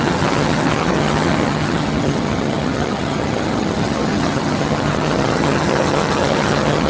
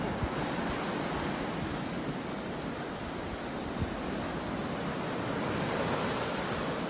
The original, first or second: second